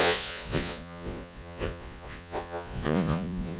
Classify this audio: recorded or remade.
remade